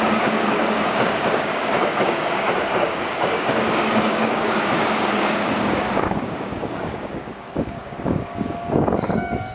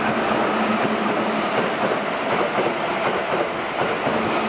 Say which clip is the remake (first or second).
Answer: first